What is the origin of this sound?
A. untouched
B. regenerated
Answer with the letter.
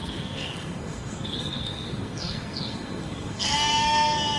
B